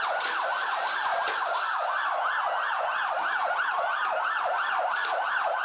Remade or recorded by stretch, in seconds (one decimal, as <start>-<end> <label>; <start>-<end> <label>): 0.0-5.6 recorded